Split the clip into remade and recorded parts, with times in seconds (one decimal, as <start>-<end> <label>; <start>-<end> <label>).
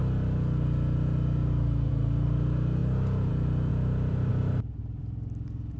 0.0-3.7 recorded; 3.7-4.3 remade; 4.3-4.8 recorded; 4.8-5.8 remade